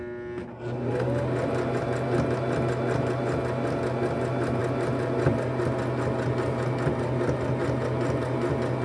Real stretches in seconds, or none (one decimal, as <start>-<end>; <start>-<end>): 0.0-8.8